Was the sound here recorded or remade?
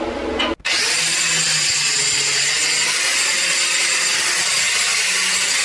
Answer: recorded